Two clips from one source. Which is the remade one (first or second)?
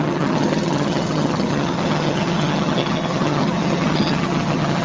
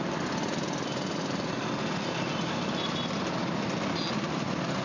first